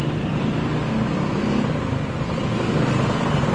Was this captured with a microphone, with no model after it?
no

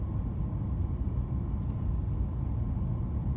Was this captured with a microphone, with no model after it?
yes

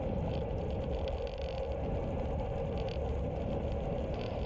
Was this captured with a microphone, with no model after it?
yes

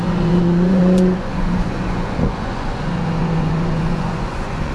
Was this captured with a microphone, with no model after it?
no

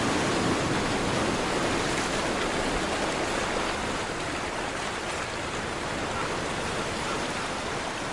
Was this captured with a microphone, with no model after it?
yes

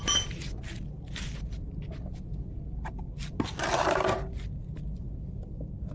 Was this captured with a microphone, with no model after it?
yes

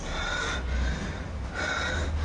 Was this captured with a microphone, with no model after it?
yes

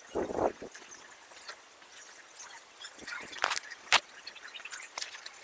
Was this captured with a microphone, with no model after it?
yes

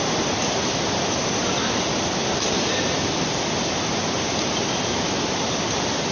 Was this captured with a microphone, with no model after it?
yes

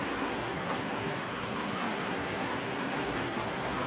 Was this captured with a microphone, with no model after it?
no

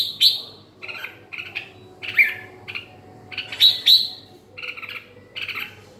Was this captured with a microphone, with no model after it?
yes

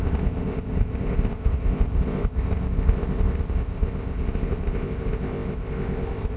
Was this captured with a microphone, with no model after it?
no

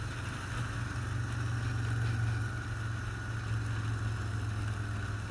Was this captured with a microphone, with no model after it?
yes